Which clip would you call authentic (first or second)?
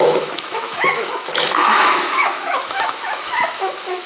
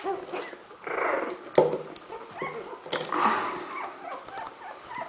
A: second